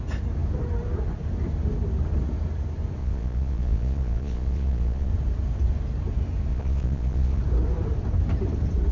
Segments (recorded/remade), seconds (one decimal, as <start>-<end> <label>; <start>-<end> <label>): 0.0-3.0 recorded; 3.0-5.1 remade; 5.1-6.5 recorded; 6.5-7.4 remade; 7.4-8.9 recorded